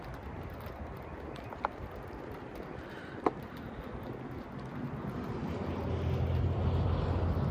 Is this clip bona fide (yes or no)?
yes